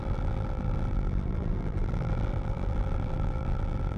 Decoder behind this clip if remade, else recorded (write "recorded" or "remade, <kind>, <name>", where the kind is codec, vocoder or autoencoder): remade, vocoder, BigVGAN v2